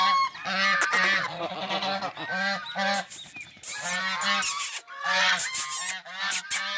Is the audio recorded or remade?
recorded